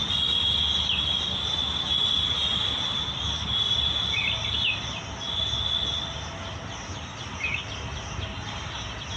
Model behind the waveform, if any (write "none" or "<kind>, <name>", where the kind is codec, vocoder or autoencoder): none